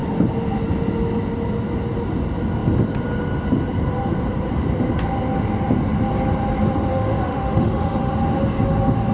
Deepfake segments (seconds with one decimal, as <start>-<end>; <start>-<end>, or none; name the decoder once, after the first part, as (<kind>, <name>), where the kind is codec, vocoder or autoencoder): 6.9-8.1 (autoencoder, DAC-VAE)